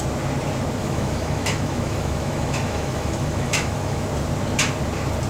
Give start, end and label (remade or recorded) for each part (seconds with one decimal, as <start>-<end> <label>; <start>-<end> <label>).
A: 0.0-0.8 recorded; 0.8-4.0 remade; 4.0-5.3 recorded